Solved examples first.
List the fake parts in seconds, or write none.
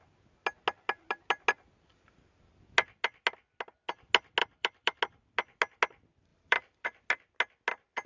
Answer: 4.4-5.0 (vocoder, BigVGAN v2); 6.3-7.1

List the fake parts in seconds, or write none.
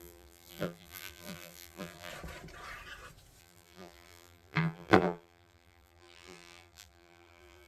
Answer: 0.0-2.1 (vocoder, BigVGAN v2); 3.4-7.7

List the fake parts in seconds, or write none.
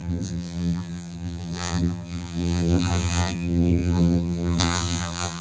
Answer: 0.0-5.4 (vocoder, BigVGAN v2)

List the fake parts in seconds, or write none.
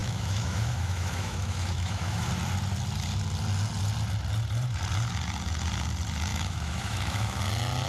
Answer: 0.0-2.3 (autoencoder, DAC-VAE); 6.3-7.4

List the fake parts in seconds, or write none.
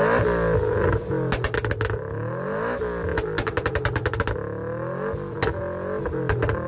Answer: none